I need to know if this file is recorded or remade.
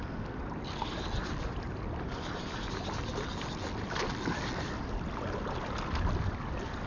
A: recorded